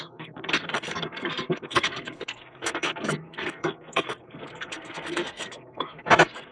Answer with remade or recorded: remade